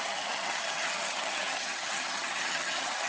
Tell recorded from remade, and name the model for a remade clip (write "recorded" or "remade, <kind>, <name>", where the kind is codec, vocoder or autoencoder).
remade, vocoder, HiFi-GAN